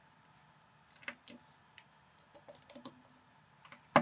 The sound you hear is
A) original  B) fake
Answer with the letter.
A